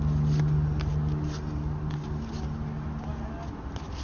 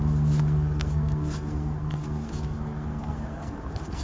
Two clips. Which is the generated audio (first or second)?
second